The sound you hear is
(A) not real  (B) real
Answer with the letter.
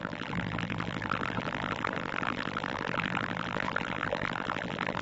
A